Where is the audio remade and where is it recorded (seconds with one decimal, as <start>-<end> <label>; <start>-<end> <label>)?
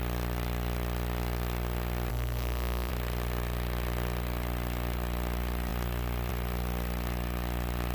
0.0-2.1 recorded; 2.1-2.9 remade; 2.9-7.9 recorded